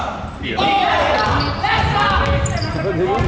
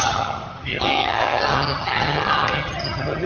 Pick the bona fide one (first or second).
first